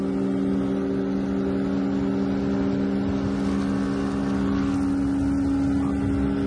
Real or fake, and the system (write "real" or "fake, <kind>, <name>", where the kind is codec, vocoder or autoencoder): real